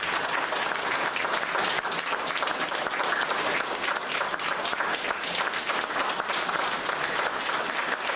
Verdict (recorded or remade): recorded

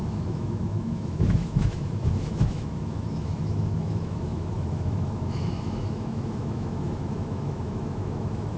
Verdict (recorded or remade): remade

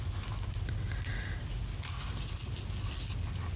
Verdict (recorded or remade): recorded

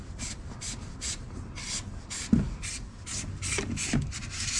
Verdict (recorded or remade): recorded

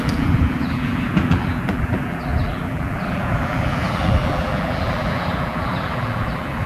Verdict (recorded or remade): remade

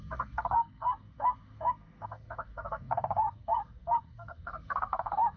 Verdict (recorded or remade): remade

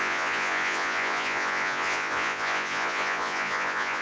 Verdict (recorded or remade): remade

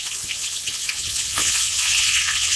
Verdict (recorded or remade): remade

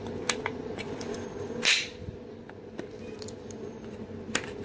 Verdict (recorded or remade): recorded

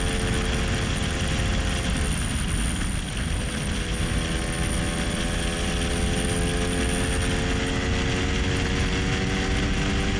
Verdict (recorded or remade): recorded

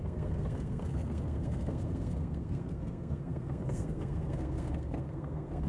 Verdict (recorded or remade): remade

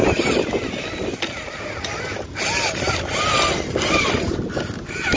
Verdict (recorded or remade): recorded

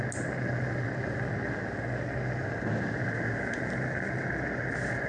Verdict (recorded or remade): recorded